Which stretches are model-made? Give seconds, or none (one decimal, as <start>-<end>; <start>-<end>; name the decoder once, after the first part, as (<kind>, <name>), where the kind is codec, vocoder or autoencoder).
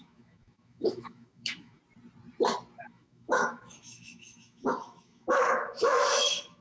0.0-1.8 (autoencoder, DAC-VAE); 2.8-6.6